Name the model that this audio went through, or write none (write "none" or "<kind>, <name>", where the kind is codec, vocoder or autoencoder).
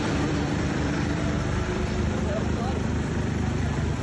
vocoder, BigVGAN v2